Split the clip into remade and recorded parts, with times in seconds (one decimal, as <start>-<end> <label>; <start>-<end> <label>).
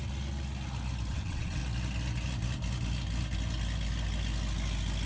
0.0-1.1 recorded; 1.1-1.6 remade; 1.6-5.1 recorded